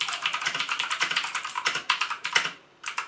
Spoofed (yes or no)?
yes